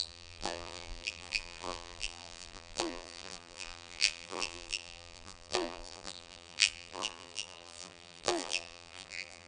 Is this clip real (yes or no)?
no